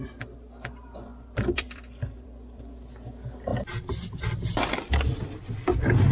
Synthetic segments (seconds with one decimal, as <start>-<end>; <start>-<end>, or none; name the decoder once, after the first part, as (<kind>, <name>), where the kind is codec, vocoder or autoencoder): 1.1-2.6 (vocoder, BigVGAN v2)